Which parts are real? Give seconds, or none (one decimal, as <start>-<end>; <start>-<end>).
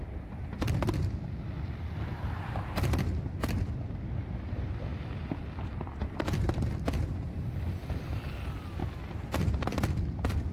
0.0-8.8; 9.5-10.5